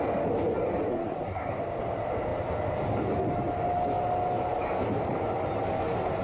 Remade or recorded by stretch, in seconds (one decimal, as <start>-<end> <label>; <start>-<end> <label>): 0.0-0.9 recorded; 0.9-1.5 remade; 1.5-6.2 recorded